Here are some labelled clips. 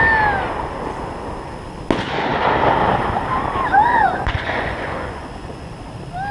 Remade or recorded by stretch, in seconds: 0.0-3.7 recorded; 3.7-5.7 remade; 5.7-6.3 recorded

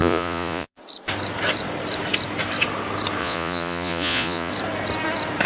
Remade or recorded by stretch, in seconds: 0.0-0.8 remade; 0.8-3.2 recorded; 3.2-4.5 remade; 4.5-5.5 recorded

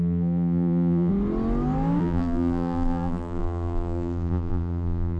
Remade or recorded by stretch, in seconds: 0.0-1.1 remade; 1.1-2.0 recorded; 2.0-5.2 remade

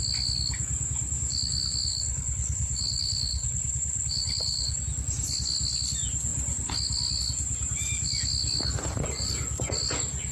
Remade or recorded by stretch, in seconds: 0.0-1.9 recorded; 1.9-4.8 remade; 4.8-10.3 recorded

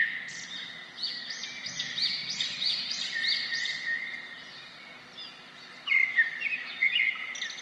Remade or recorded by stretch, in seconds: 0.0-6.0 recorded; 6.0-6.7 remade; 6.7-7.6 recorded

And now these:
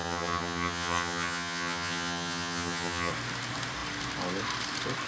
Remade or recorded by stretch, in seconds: 0.0-3.1 remade; 3.1-5.1 recorded